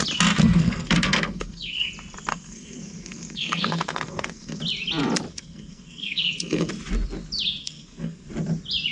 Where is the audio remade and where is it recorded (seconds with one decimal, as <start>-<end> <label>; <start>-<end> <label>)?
0.0-0.4 recorded; 0.4-1.9 remade; 1.9-2.3 recorded; 2.3-4.6 remade; 4.6-5.3 recorded; 5.3-6.7 remade; 6.7-7.6 recorded; 7.6-8.3 remade; 8.3-8.9 recorded